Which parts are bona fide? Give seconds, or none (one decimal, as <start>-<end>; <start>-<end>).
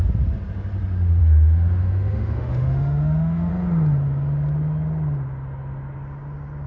0.0-1.2; 3.5-6.7